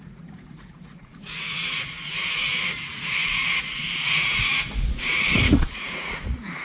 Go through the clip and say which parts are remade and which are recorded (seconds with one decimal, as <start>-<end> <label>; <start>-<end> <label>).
0.0-6.6 remade